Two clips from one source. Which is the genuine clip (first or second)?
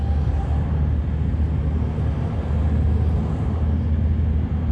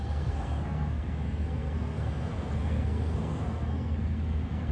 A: first